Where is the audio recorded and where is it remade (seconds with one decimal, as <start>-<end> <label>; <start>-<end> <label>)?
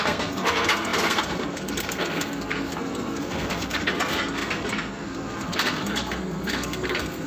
0.0-7.3 remade